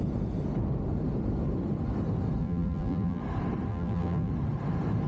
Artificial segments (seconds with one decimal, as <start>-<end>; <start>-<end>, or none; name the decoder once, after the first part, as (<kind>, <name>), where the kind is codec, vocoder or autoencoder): 2.4-3.2 (vocoder, BigVGAN v2); 3.7-4.3